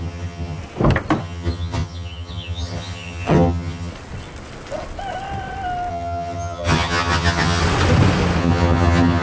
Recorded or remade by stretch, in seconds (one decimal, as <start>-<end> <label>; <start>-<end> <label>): 0.0-0.6 remade; 0.6-1.2 recorded; 1.2-3.9 remade; 3.9-5.9 recorded; 5.9-7.6 remade; 7.6-8.4 recorded; 8.4-9.2 remade